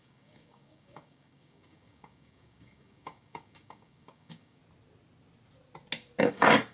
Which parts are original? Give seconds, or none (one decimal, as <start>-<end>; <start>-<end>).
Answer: 4.6-6.2